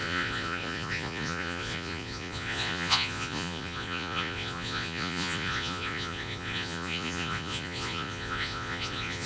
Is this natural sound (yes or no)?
no